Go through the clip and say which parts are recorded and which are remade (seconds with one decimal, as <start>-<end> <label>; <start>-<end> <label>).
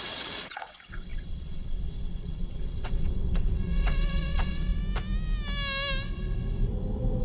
0.0-4.8 remade; 4.8-7.2 recorded